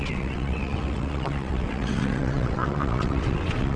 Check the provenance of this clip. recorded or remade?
remade